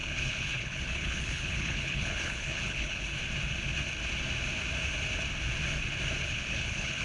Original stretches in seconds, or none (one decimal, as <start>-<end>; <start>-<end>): 3.2-6.2